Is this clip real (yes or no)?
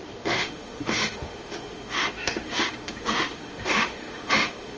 no